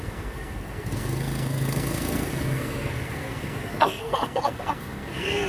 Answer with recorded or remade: remade